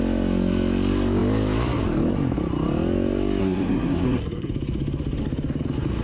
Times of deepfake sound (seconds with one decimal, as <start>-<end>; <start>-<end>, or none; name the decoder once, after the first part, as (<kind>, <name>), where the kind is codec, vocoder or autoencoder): 3.4-4.5 (codec, SNAC)